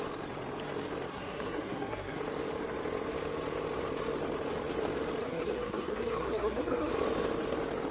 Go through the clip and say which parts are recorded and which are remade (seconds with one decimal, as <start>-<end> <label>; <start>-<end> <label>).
0.0-1.1 recorded; 1.1-2.2 remade; 2.2-5.2 recorded; 5.2-6.9 remade; 6.9-7.9 recorded